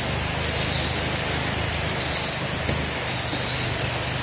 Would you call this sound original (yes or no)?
yes